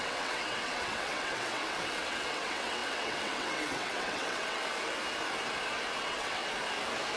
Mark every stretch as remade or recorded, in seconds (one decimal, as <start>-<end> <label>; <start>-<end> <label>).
0.0-4.6 remade; 4.6-6.0 recorded; 6.0-6.4 remade; 6.4-7.2 recorded

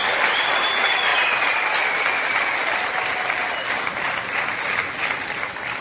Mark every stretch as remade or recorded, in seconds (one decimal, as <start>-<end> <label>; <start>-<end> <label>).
0.0-0.7 remade; 0.7-5.8 recorded